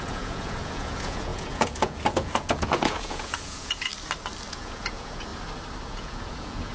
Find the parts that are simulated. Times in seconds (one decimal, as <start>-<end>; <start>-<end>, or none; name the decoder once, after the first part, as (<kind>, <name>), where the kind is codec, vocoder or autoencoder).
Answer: 0.0-3.9 (vocoder, Vocos); 4.5-5.3; 5.9-6.7